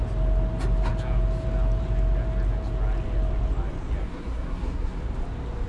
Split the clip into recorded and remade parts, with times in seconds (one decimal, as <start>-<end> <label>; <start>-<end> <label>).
0.0-4.0 recorded; 4.0-5.0 remade; 5.0-5.7 recorded